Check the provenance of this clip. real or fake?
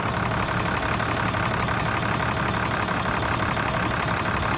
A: real